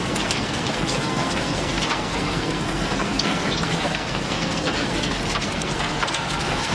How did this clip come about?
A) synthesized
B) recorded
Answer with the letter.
A